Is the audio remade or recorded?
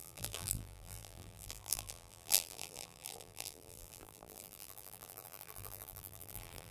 remade